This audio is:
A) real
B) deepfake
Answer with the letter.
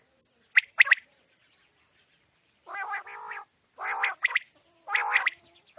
A